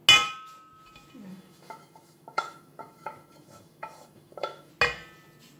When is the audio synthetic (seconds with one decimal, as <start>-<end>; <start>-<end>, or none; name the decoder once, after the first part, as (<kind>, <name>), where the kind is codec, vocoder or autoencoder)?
1.3-4.7 (autoencoder, DAC-VAE)